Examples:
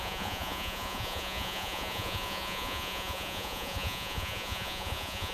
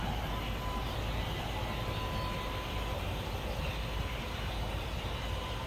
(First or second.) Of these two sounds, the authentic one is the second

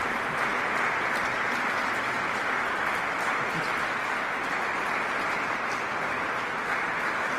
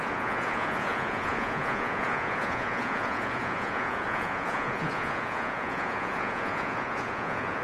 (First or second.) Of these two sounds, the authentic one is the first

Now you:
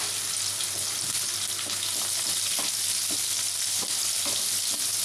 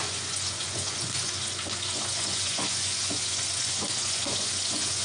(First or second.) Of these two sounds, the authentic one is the first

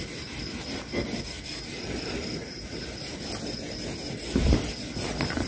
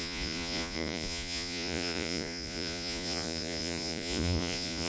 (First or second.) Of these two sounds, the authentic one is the first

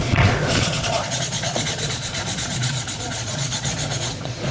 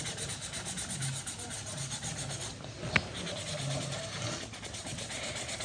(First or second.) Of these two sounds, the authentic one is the second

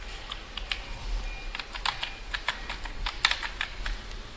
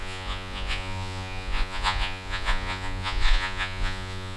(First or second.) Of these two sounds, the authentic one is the first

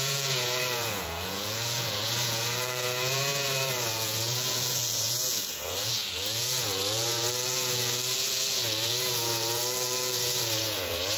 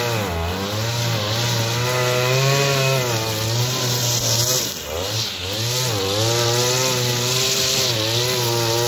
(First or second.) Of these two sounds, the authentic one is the second